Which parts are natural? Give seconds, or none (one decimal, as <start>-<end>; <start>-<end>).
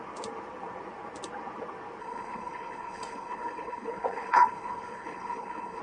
0.0-2.0